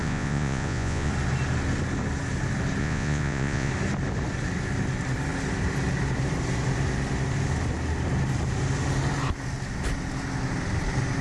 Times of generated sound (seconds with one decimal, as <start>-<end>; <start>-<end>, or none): 0.0-1.1; 2.8-3.7